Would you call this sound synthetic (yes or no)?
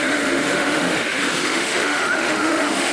yes